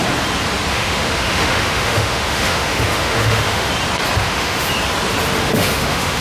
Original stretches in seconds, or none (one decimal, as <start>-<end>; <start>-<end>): 0.0-0.7; 3.7-4.2; 4.7-5.4

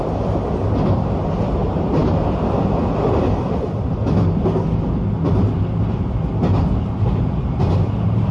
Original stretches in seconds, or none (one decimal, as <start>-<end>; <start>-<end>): 0.0-8.3